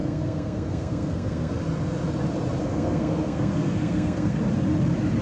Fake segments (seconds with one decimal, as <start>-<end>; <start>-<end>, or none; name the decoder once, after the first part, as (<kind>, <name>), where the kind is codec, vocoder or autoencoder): 0.0-1.5 (codec, SNAC); 2.6-4.4